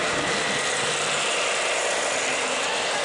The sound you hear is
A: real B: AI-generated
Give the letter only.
A